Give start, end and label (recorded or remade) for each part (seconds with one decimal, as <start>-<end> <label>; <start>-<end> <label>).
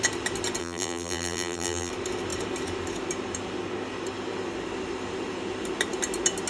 0.0-0.6 recorded; 0.6-1.9 remade; 1.9-6.5 recorded